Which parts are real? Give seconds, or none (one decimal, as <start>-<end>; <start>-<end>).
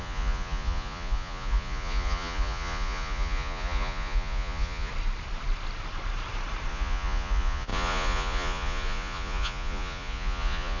4.9-6.7